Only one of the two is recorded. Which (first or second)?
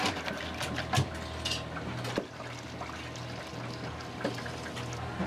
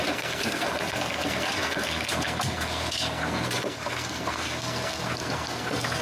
first